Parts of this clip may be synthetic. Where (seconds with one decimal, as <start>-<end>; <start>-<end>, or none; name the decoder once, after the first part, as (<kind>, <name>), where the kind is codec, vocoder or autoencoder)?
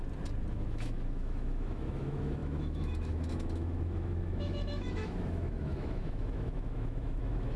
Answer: 0.5-7.6 (autoencoder, DAC-VAE)